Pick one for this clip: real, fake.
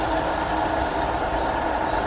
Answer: real